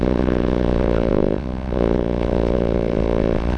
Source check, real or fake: fake